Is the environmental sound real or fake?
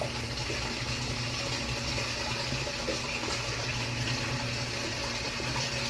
real